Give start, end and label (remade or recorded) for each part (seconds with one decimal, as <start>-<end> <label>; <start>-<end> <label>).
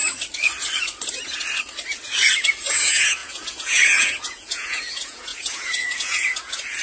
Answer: 0.0-2.7 recorded; 2.7-6.8 remade